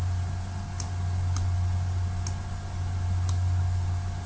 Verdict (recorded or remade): recorded